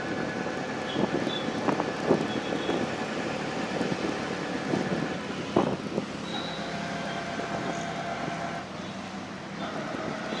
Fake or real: real